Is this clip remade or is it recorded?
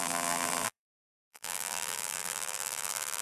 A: remade